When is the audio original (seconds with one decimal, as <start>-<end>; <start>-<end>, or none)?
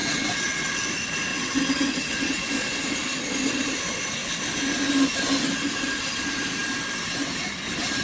0.8-1.3; 2.5-8.0